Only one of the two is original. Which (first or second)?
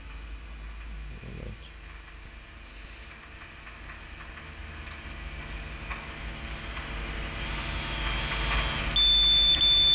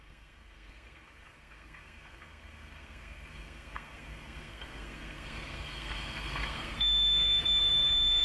first